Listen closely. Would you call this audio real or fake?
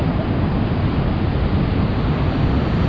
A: real